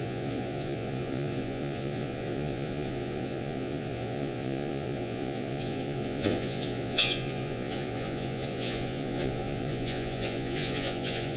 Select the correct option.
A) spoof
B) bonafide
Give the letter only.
A